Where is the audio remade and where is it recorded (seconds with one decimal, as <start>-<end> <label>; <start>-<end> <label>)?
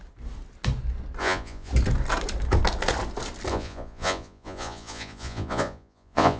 0.0-1.2 recorded; 1.2-1.7 remade; 1.7-3.5 recorded; 3.5-6.4 remade